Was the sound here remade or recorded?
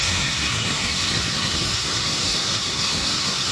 remade